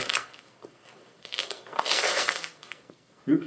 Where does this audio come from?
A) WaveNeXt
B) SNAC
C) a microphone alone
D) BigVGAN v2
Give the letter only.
B